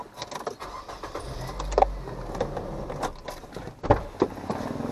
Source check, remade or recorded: recorded